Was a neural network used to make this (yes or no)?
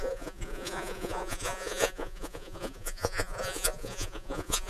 yes